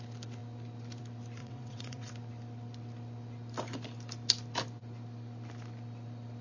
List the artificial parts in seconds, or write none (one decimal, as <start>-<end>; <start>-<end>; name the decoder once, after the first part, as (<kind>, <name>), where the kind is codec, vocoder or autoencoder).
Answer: 1.4-2.1 (vocoder, WaveNeXt)